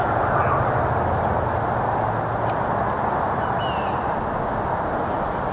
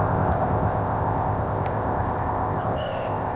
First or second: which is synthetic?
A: second